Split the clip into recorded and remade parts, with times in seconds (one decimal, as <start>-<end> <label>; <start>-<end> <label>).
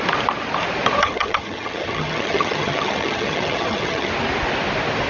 0.0-1.0 recorded; 1.0-4.1 remade; 4.1-5.1 recorded